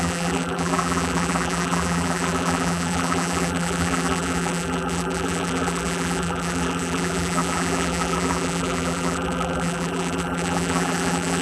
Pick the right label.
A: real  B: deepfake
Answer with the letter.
B